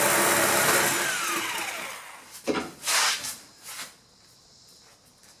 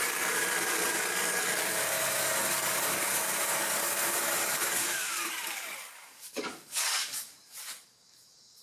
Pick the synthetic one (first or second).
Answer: second